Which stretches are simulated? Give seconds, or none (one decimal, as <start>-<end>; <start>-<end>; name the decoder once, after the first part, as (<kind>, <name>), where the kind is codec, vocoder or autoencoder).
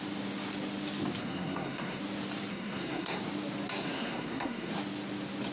1.2-2.0 (codec, SNAC); 2.5-3.2; 3.8-4.7